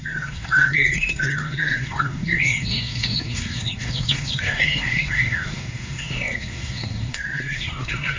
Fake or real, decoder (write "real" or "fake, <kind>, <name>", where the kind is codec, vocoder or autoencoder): fake, codec, SNAC